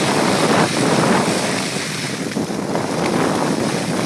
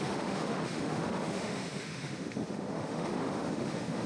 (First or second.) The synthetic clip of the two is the second